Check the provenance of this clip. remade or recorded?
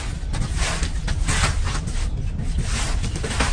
recorded